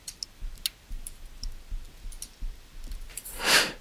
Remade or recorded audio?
recorded